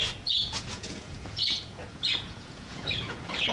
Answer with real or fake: fake